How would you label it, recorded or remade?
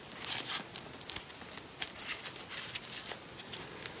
recorded